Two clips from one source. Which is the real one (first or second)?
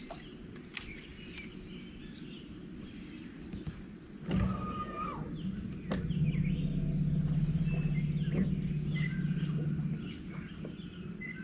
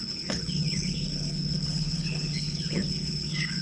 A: first